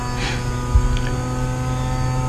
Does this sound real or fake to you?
real